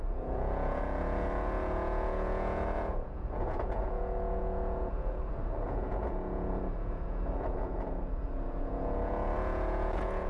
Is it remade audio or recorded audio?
remade